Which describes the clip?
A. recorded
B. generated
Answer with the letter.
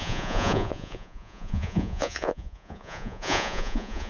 B